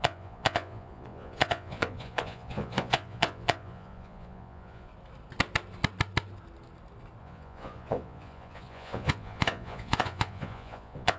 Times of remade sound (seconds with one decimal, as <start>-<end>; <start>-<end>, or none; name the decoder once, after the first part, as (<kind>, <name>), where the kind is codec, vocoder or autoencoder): 0.0-4.9 (vocoder, Vocos); 7.2-11.2